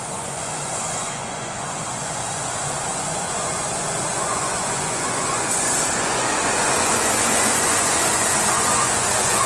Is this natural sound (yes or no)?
no